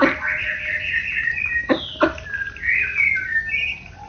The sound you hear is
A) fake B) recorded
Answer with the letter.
B